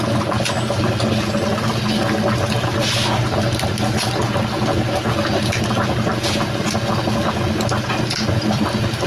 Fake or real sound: real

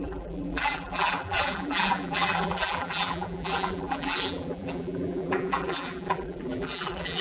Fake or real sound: fake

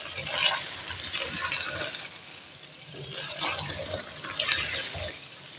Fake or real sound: real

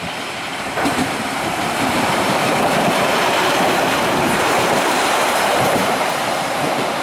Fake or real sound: fake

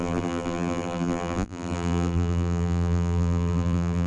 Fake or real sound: fake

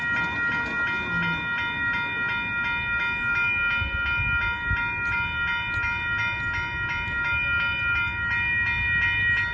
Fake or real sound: real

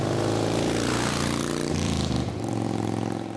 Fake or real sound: fake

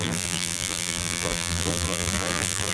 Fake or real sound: fake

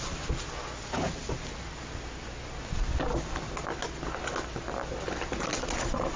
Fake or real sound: real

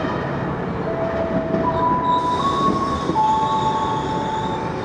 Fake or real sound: real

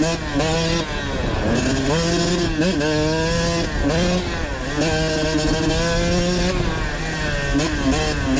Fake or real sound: real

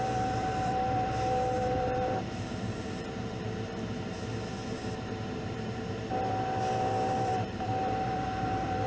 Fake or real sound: fake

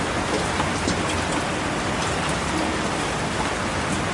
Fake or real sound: real